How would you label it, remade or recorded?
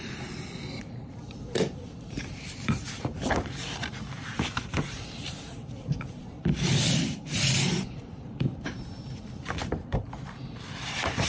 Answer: remade